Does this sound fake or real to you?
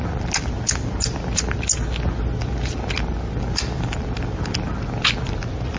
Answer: real